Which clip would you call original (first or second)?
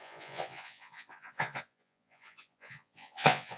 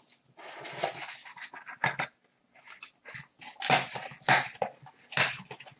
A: second